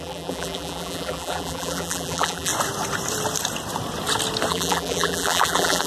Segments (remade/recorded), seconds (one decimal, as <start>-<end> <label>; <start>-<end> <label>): 0.0-2.5 remade; 2.5-4.5 recorded; 4.5-5.9 remade